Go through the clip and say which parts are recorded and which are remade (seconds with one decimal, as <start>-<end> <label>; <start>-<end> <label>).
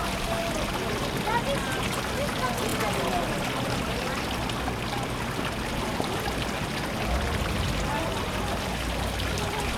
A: 0.0-9.8 recorded